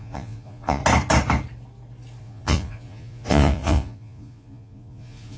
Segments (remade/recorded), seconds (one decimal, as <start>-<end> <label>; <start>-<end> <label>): 0.0-0.8 remade; 0.8-2.2 recorded; 2.2-5.4 remade